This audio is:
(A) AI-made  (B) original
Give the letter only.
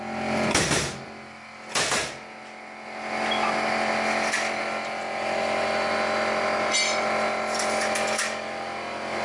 B